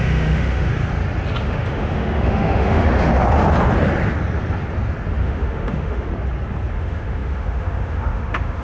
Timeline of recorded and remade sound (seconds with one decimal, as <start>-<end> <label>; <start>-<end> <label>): 0.0-0.7 remade; 0.7-1.4 recorded; 1.4-3.1 remade; 3.1-5.2 recorded; 5.2-6.1 remade; 6.1-6.7 recorded; 6.7-8.6 remade